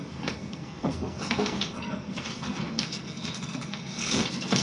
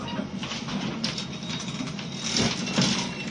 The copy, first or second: first